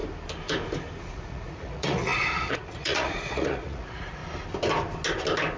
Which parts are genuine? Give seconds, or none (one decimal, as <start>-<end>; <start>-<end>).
0.0-1.0; 4.2-5.6